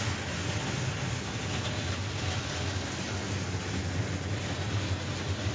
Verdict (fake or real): real